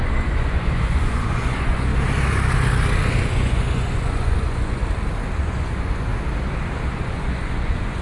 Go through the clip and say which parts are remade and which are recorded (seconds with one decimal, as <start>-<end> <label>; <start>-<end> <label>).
0.0-1.9 remade; 1.9-3.3 recorded; 3.3-4.8 remade; 4.8-5.4 recorded; 5.4-6.1 remade; 6.1-6.9 recorded; 6.9-8.0 remade

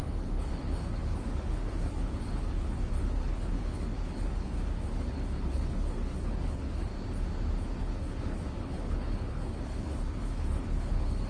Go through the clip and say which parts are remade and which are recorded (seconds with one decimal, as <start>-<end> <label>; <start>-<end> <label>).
0.0-6.9 remade; 6.9-7.8 recorded; 7.8-11.3 remade